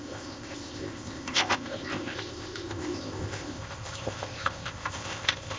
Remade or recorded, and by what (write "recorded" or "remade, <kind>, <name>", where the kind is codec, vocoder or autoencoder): remade, codec, ZipCodec